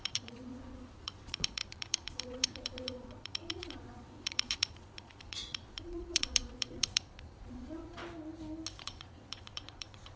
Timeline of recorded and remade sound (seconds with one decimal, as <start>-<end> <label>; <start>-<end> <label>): 0.0-8.0 remade; 8.0-8.8 recorded; 8.8-10.2 remade